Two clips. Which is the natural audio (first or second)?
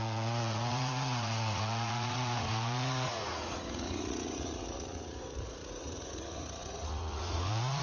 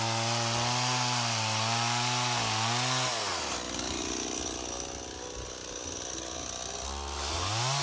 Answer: second